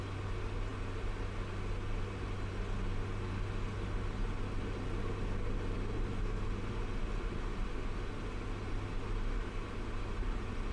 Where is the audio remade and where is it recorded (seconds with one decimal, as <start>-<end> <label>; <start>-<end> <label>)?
0.0-10.7 recorded